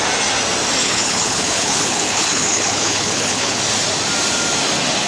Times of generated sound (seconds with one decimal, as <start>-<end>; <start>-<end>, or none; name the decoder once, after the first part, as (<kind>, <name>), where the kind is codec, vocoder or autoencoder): 0.8-3.6 (codec, HILCodec)